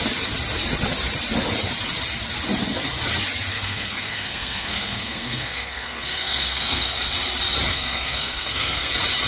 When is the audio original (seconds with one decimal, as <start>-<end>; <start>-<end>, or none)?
0.0-3.5; 7.0-7.7; 8.9-9.3